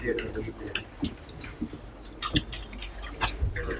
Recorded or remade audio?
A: recorded